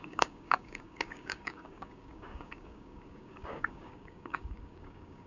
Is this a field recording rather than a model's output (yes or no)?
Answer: no